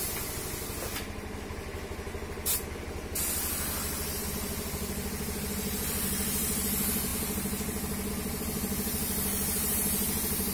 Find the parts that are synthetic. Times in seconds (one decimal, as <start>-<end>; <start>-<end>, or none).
none